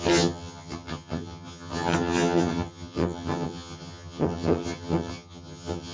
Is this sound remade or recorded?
remade